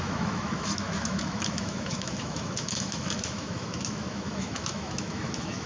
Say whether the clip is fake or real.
fake